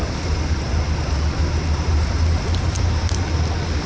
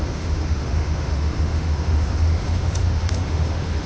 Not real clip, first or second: second